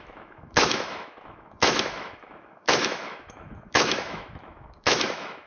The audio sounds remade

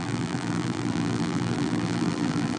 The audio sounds remade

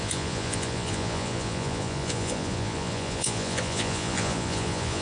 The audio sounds remade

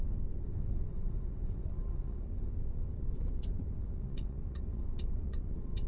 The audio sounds remade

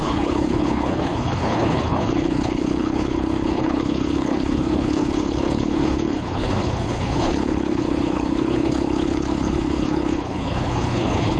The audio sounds remade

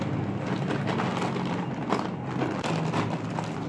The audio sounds recorded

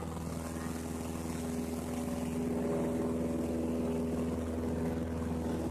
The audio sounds recorded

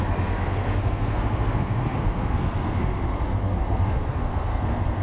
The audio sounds remade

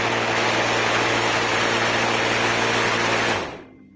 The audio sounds recorded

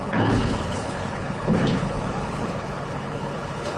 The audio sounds remade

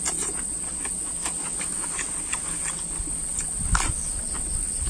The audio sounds recorded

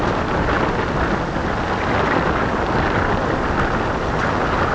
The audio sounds recorded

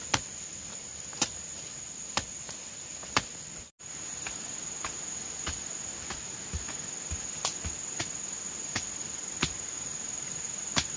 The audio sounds recorded